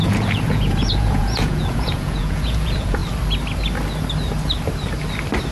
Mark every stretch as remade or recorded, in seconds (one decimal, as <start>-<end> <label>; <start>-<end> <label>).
0.0-3.0 remade; 3.0-5.5 recorded